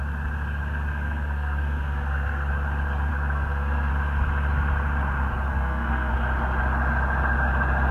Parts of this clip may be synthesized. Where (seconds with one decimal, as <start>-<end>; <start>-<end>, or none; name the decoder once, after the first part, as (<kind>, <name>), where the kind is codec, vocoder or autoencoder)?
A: 0.9-2.5 (codec, SNAC); 3.1-3.9; 5.5-6.1